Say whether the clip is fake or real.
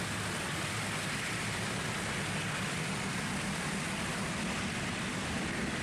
real